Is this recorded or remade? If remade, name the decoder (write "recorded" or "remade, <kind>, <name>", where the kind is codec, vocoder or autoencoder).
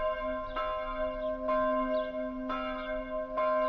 recorded